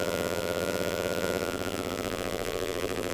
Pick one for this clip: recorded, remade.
remade